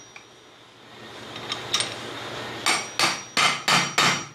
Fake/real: real